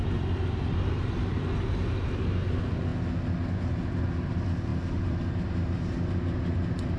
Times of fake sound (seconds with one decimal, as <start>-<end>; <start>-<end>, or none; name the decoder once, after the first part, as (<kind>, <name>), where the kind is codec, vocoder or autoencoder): none